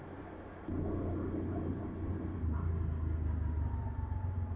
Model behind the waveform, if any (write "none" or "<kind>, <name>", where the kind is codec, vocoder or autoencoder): none